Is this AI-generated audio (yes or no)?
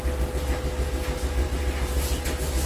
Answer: no